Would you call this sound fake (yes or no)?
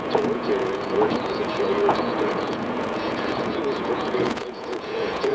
yes